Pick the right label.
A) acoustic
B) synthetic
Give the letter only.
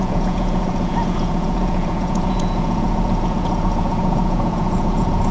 B